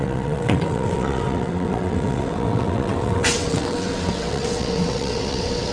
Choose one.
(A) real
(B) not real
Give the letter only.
B